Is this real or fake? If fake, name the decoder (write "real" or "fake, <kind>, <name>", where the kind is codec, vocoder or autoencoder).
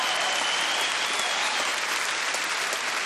real